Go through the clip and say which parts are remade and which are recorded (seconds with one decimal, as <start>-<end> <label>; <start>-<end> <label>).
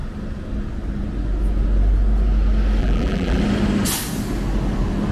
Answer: 0.0-2.8 recorded; 2.8-3.4 remade; 3.4-5.1 recorded